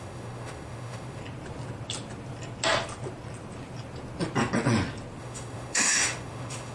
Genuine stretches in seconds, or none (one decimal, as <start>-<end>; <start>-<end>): 1.2-5.2